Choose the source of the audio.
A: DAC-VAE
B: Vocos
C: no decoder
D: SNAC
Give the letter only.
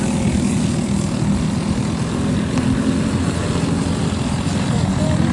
C